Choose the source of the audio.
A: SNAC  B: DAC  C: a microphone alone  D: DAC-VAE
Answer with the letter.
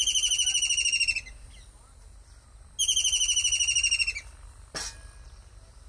C